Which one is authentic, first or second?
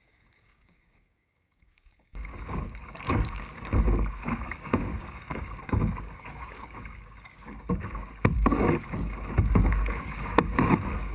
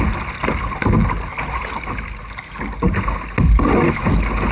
second